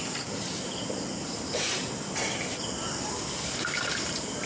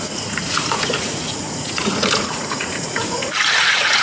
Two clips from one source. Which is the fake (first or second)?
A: second